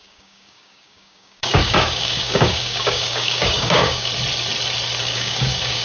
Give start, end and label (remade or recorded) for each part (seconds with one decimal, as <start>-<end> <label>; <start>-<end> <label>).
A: 0.0-4.1 remade; 4.1-5.0 recorded; 5.0-5.8 remade